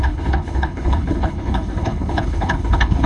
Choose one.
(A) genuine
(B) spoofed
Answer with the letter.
B